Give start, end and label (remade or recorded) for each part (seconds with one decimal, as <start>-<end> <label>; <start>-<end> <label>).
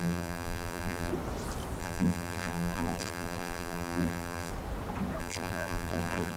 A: 0.0-1.1 remade; 1.1-1.8 recorded; 1.8-4.5 remade; 4.5-5.2 recorded; 5.2-6.4 remade